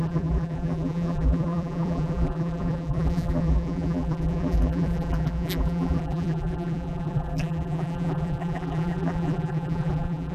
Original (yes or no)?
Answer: no